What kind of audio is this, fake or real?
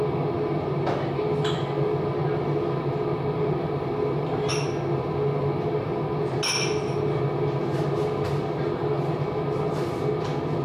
real